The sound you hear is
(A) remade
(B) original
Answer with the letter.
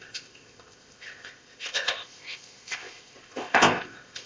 A